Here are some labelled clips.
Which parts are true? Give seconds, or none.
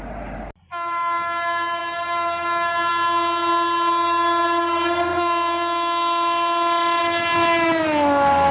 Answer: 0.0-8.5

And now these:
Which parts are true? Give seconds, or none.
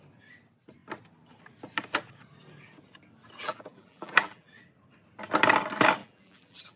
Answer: 0.0-3.4; 4.6-6.0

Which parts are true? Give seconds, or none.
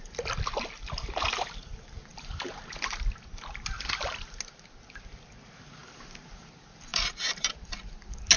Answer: 0.0-2.1; 2.9-6.9; 7.7-8.4